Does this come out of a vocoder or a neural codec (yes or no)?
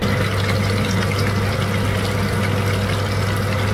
no